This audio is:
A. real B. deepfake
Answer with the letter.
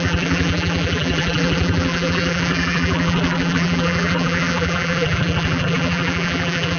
B